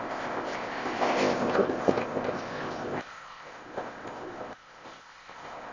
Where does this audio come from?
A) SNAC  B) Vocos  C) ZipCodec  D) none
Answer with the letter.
C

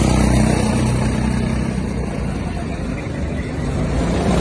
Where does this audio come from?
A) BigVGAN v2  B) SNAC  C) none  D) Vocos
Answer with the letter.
C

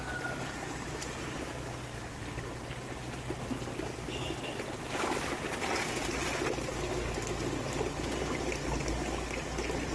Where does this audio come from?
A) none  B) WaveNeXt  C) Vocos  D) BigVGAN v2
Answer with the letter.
A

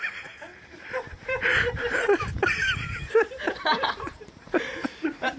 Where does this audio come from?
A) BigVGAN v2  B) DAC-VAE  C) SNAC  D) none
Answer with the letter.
A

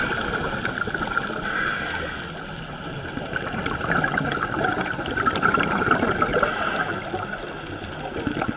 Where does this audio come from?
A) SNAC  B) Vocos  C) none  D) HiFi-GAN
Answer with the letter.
C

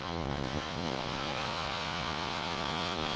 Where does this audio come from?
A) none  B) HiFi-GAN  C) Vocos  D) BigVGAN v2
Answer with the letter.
C